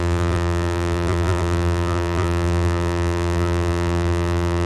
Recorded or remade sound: remade